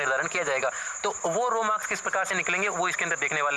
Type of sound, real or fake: real